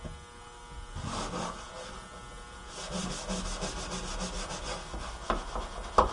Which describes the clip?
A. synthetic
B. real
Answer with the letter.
B